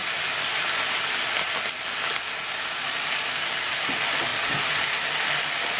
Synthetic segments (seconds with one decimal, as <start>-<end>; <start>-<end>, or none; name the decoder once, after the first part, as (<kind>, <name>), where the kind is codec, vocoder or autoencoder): none